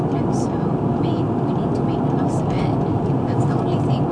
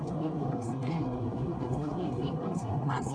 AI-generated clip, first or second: second